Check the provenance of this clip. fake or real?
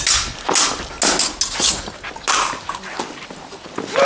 real